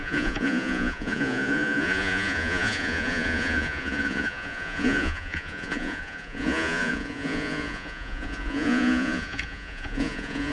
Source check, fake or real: fake